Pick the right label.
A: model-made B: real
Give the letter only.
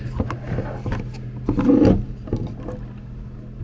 B